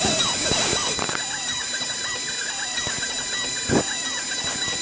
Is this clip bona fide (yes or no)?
yes